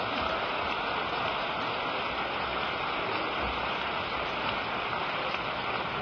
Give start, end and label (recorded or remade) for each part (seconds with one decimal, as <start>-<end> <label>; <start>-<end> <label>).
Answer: 0.0-6.0 recorded